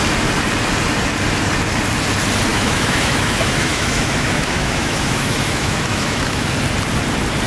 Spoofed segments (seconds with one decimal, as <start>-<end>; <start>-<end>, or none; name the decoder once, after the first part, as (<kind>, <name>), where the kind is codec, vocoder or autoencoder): 2.5-6.5 (autoencoder, DAC-VAE)